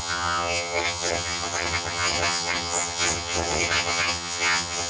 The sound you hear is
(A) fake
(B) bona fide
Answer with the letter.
A